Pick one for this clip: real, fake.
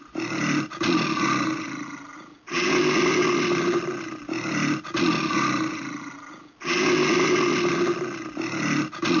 real